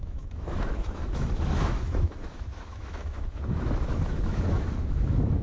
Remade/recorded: remade